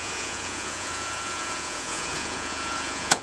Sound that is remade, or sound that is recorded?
remade